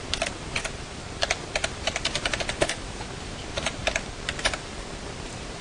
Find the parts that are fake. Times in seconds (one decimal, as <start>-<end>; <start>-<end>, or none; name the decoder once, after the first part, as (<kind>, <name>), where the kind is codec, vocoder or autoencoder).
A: 0.0-3.8 (vocoder, BigVGAN v2); 4.4-5.6